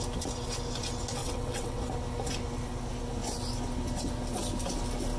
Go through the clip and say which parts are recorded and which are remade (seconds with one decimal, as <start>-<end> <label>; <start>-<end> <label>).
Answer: 0.0-1.2 recorded; 1.2-1.8 remade; 1.8-5.2 recorded